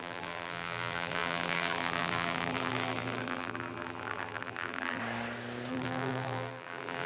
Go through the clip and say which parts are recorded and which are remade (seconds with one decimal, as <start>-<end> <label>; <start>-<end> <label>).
0.0-5.0 remade; 5.0-5.7 recorded; 5.7-7.1 remade